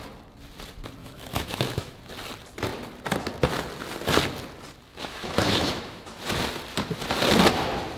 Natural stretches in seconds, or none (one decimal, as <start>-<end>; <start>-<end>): 0.0-1.0; 2.0-4.9; 6.2-8.0